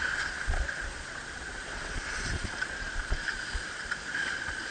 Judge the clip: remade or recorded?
remade